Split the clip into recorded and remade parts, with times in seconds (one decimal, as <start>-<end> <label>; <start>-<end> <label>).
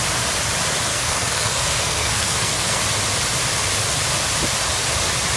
0.0-0.9 recorded; 0.9-2.8 remade; 2.8-5.4 recorded